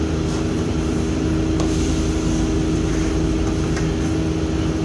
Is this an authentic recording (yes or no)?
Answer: yes